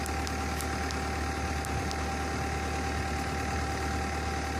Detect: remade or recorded recorded